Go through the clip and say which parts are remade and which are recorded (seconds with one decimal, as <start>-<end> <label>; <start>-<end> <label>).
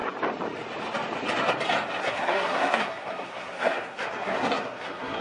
0.0-2.0 recorded; 2.0-5.2 remade